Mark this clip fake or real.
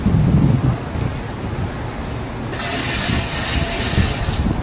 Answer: real